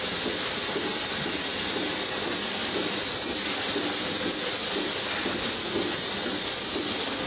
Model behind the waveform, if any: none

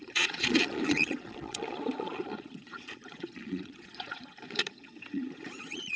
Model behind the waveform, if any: vocoder, Vocos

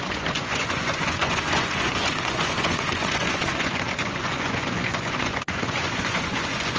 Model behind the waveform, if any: vocoder, Vocos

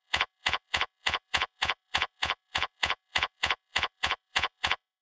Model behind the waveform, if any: vocoder, Vocos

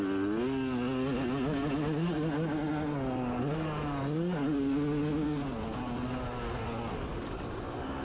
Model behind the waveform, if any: none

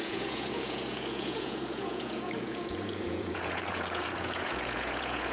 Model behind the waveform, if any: vocoder, Vocos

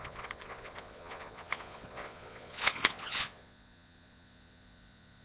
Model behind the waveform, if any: vocoder, Vocos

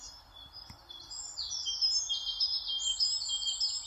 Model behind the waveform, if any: none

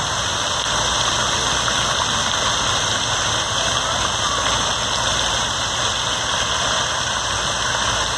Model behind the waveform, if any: none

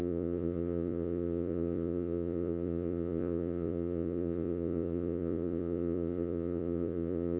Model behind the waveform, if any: vocoder, Vocos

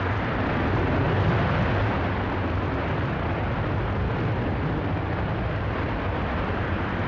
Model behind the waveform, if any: none